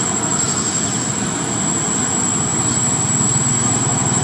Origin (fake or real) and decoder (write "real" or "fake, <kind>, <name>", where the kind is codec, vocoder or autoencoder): real